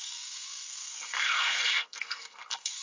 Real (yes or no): no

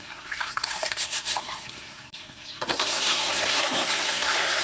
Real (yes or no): no